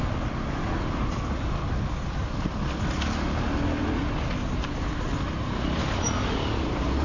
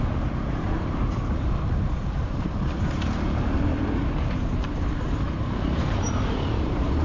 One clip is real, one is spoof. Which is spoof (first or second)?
second